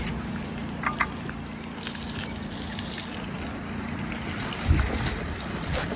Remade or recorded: remade